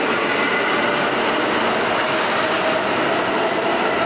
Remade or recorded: recorded